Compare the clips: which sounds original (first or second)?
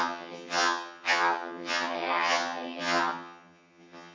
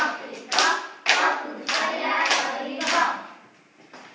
second